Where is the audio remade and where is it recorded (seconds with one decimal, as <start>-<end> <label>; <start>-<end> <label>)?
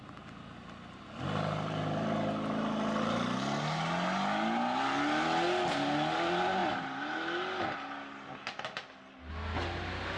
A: 0.0-10.2 recorded